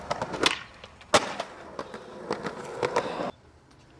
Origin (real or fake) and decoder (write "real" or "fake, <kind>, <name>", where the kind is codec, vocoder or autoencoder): real